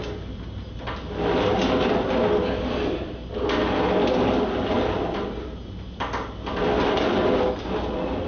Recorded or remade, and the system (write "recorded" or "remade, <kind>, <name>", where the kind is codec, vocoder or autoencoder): recorded